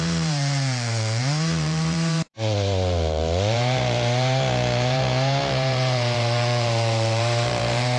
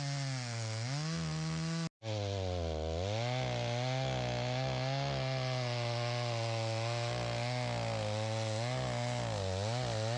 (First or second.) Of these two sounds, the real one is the second